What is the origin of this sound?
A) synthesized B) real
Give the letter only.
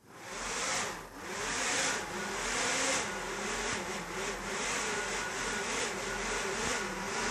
B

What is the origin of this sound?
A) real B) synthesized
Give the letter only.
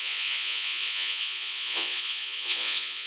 B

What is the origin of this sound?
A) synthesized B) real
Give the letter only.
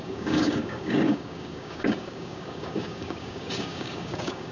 A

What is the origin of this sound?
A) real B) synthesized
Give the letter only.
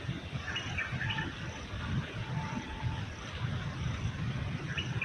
A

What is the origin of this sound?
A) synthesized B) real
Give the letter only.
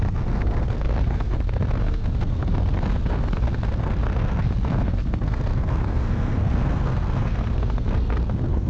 A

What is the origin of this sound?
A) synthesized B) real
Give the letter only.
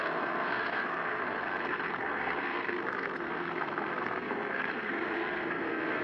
A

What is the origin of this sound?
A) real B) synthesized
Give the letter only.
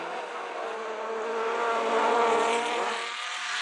A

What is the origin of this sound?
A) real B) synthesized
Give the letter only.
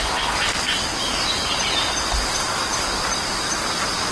A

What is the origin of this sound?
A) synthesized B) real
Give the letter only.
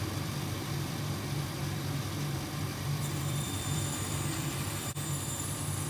A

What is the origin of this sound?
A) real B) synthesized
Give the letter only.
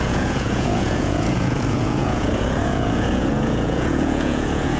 B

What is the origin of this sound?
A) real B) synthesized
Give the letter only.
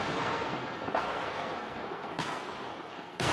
B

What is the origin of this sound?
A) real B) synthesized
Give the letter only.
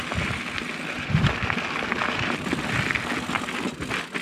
A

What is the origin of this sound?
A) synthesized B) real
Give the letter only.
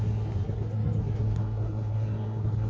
A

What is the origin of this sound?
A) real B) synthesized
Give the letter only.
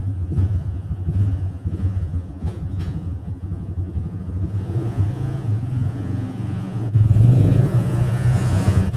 B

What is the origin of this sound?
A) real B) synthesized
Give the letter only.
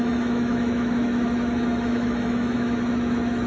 B